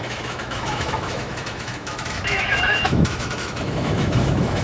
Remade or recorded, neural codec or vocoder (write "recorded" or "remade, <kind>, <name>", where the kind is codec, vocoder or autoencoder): remade, autoencoder, DAC-VAE